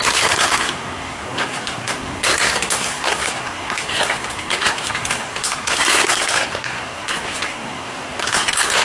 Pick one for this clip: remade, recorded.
remade